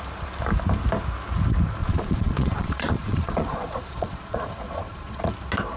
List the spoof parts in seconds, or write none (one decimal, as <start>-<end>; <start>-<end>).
1.8-5.3